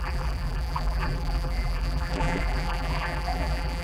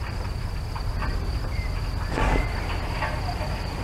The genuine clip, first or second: second